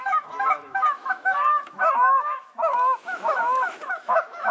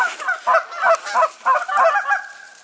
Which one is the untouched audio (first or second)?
second